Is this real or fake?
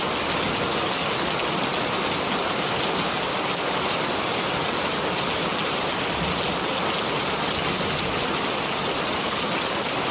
real